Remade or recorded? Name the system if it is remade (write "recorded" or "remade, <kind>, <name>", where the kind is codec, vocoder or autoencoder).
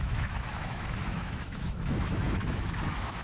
remade, autoencoder, DAC-VAE